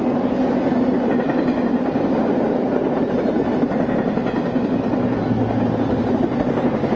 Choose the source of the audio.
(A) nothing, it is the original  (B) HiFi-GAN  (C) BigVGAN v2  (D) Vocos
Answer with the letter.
A